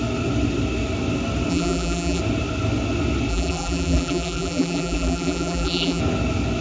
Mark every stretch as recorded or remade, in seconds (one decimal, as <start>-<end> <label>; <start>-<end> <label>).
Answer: 0.0-1.5 recorded; 1.5-2.2 remade; 2.2-3.3 recorded; 3.3-6.0 remade; 6.0-6.6 recorded